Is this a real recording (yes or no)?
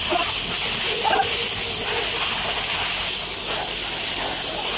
yes